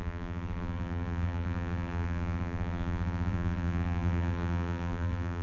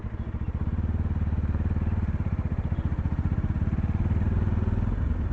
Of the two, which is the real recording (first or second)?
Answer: second